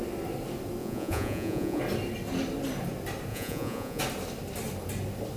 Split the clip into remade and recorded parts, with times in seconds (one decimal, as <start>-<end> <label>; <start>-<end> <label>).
0.0-0.8 recorded; 0.8-1.8 remade; 1.8-3.3 recorded; 3.3-4.0 remade; 4.0-5.4 recorded